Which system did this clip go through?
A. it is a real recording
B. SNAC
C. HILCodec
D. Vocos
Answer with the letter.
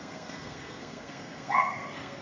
B